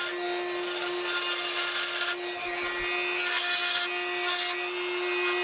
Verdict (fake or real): real